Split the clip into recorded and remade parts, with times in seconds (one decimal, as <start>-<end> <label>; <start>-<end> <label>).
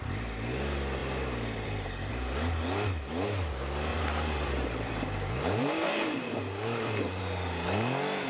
0.0-1.0 recorded; 1.0-2.1 remade; 2.1-3.9 recorded; 3.9-7.2 remade; 7.2-8.3 recorded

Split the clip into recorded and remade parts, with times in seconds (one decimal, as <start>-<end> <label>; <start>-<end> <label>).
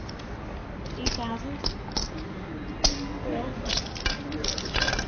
0.0-5.1 recorded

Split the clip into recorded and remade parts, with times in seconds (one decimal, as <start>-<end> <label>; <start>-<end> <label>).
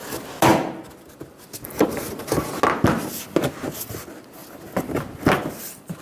0.0-6.0 recorded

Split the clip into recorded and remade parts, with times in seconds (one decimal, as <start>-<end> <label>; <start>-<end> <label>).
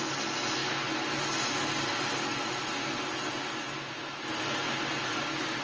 0.0-5.6 recorded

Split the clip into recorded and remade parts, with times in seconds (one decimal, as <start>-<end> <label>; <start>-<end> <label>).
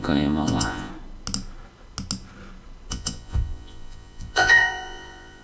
0.0-0.9 remade; 0.9-2.9 recorded; 2.9-5.4 remade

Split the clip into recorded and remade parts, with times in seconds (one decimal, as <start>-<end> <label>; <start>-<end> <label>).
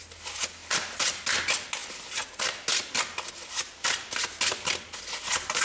0.0-5.6 recorded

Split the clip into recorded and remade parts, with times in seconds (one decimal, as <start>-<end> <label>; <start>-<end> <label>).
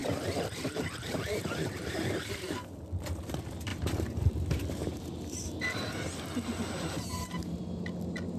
0.0-2.7 remade; 2.7-3.7 recorded; 3.7-5.8 remade; 5.8-7.1 recorded; 7.1-7.6 remade; 7.6-8.4 recorded